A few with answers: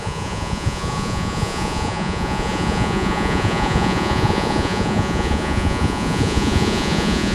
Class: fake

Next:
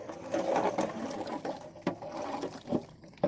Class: real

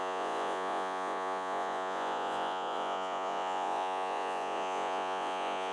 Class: fake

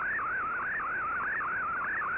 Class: real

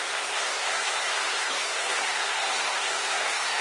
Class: fake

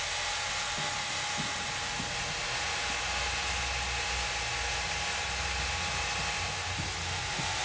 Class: real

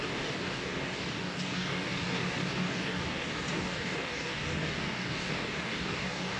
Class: fake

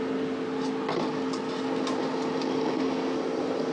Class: real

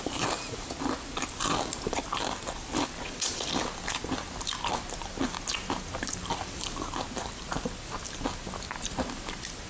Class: real